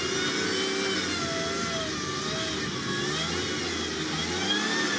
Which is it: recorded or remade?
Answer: recorded